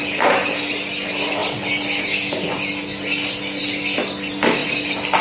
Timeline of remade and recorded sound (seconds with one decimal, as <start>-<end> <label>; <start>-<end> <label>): 0.0-5.2 recorded